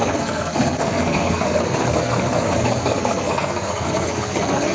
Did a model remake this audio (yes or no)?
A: yes